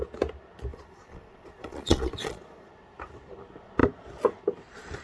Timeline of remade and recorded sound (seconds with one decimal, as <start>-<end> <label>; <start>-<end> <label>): 0.0-0.7 recorded; 0.7-2.7 remade; 2.7-5.0 recorded